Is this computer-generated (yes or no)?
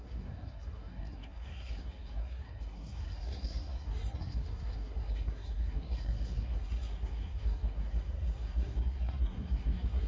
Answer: yes